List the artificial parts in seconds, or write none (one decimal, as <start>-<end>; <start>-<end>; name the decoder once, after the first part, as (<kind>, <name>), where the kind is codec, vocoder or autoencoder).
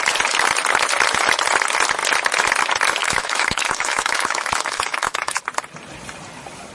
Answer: 3.0-5.4 (autoencoder, DAC-VAE)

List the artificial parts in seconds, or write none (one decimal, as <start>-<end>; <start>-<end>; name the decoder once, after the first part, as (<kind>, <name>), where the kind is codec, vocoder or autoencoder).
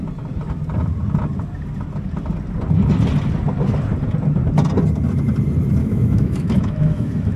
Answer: 5.8-7.4 (autoencoder, DAC-VAE)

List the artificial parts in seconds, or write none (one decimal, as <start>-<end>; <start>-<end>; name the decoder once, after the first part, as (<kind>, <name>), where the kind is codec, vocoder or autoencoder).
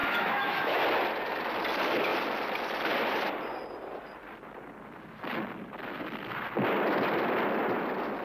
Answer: 0.0-0.8 (autoencoder, DAC-VAE)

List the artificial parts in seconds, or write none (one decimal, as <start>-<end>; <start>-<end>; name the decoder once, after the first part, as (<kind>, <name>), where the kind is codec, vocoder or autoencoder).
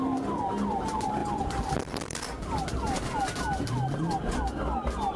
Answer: none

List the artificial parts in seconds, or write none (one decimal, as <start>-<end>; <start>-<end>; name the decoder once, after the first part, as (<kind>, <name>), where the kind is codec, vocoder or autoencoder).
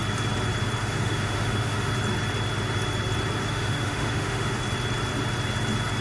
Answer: 0.8-1.9 (autoencoder, DAC-VAE); 3.4-4.6